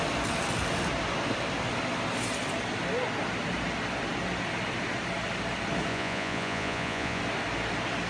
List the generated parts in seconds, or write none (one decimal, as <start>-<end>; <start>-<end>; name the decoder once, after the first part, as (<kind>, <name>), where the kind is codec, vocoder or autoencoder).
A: 5.9-7.2 (vocoder, Vocos)